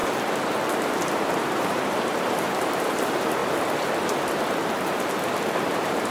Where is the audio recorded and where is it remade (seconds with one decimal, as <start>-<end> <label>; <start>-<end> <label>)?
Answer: 0.0-0.8 recorded; 0.8-3.4 remade; 3.4-5.6 recorded; 5.6-6.1 remade